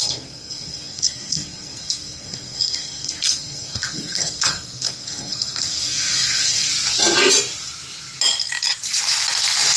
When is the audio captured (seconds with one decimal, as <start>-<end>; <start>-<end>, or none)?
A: 6.7-9.8